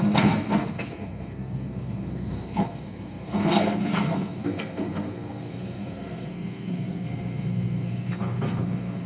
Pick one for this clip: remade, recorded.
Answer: remade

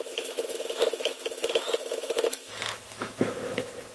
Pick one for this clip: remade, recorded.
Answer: remade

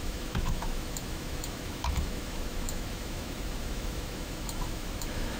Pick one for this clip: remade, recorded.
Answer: remade